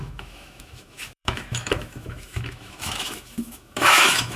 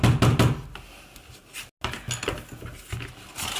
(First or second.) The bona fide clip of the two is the second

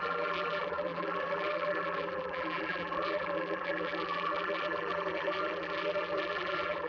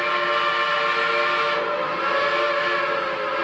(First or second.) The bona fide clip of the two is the second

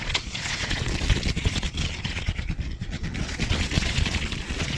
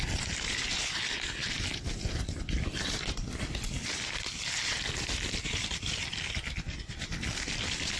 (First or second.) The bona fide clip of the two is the second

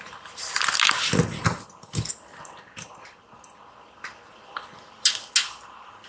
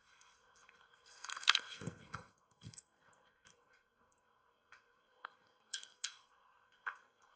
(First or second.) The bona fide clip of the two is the first